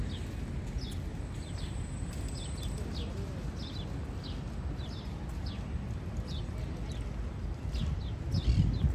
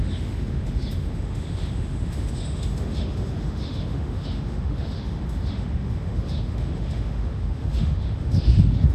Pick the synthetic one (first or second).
second